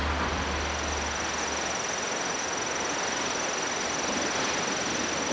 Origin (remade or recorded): recorded